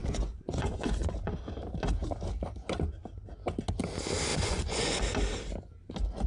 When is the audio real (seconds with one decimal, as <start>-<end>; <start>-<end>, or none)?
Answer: 1.4-4.3; 5.0-6.3